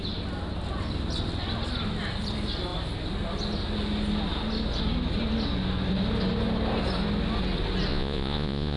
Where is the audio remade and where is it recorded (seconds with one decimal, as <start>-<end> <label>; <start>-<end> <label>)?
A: 0.0-7.9 recorded; 7.9-8.8 remade